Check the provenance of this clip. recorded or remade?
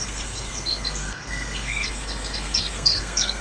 remade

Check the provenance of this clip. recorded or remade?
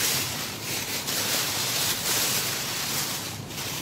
remade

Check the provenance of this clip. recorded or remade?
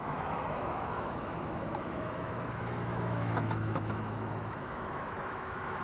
remade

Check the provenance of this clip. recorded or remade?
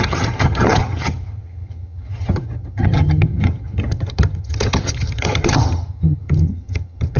remade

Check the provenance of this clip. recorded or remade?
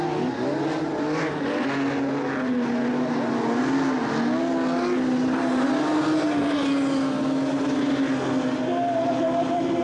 recorded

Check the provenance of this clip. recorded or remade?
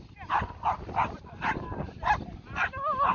recorded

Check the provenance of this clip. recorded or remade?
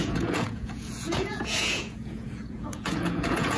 remade